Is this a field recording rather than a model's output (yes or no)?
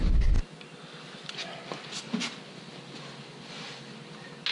yes